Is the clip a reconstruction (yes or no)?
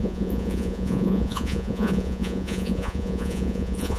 yes